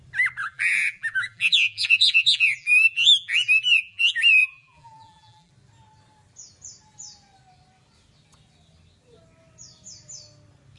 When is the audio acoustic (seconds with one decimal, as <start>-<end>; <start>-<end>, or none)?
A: 0.0-0.4; 5.5-10.8